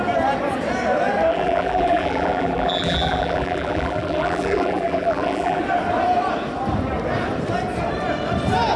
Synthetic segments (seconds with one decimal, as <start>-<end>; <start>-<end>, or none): 1.3-5.6

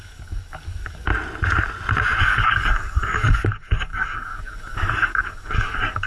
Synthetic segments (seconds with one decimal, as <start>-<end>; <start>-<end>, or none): 0.0-1.1; 2.2-6.1

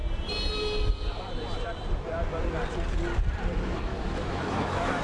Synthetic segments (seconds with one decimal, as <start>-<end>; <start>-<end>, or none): 3.9-5.0